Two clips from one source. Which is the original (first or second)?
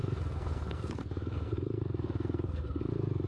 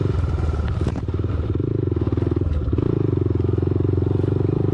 second